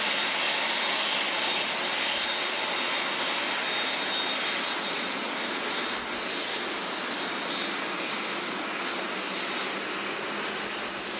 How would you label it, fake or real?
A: real